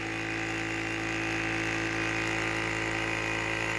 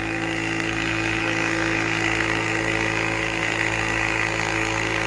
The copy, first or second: second